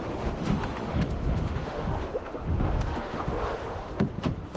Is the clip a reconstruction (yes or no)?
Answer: yes